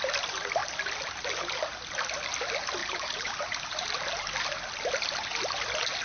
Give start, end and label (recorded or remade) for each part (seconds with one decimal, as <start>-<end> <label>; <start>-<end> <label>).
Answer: 0.0-2.8 recorded; 2.8-4.0 remade; 4.0-6.0 recorded